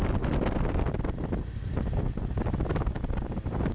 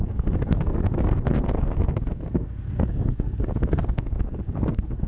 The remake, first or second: second